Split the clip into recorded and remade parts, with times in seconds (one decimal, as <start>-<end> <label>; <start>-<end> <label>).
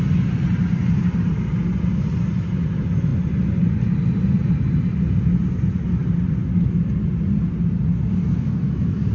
0.0-9.1 recorded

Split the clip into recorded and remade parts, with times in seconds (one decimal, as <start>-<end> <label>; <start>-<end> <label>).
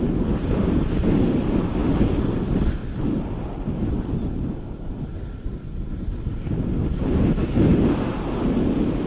0.0-9.1 recorded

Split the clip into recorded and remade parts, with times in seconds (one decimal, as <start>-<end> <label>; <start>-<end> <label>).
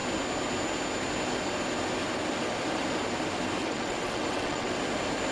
0.0-3.6 recorded; 3.6-4.7 remade; 4.7-5.3 recorded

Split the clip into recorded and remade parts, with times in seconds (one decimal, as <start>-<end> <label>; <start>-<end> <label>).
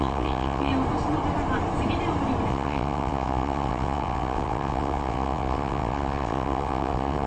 0.0-0.7 remade; 0.7-2.5 recorded; 2.5-7.3 remade